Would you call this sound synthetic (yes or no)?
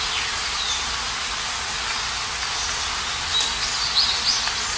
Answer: no